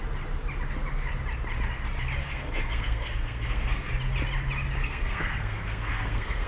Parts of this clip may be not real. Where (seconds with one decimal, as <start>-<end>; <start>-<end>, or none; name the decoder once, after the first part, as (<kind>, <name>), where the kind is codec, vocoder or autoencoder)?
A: 2.2-3.9 (codec, SNAC); 4.8-6.5